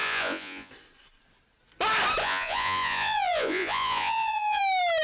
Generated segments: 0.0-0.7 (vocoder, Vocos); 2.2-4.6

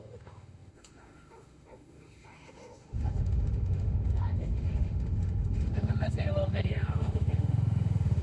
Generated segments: 0.0-8.2 (autoencoder, DAC-VAE)

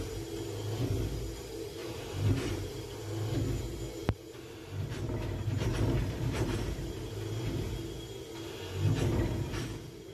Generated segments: 1.8-3.0 (vocoder, BigVGAN v2); 4.0-7.1

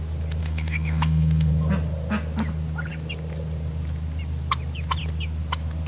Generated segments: 0.4-1.5 (autoencoder, DAC-VAE)

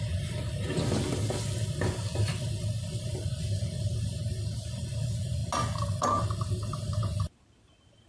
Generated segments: none

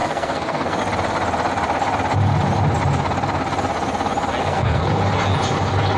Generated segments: 0.0-0.8 (codec, SNAC); 4.4-4.9

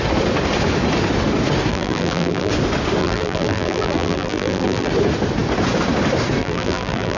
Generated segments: 1.7-2.5 (vocoder, BigVGAN v2); 3.0-4.9; 6.4-7.2

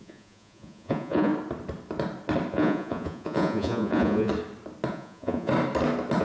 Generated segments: 0.0-1.3 (vocoder, Vocos); 2.5-4.3; 4.9-5.5